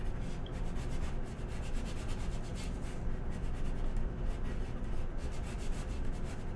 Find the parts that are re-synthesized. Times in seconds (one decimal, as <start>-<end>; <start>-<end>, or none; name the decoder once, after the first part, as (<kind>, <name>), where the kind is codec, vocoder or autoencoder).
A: none